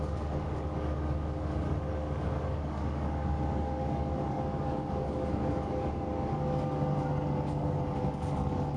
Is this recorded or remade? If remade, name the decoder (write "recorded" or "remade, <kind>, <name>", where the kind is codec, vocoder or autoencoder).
remade, codec, DAC